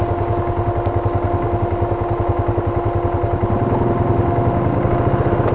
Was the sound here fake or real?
real